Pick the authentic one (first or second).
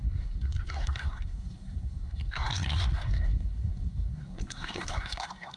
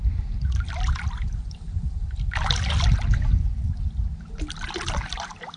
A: second